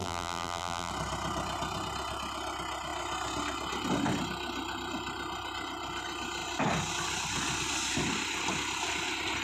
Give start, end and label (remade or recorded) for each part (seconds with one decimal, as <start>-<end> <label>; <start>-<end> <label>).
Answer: 0.0-0.9 remade; 0.9-9.4 recorded